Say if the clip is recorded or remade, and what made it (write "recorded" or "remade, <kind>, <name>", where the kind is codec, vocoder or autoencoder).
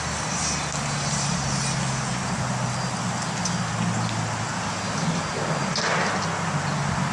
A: recorded